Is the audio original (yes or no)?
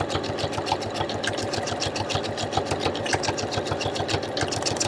yes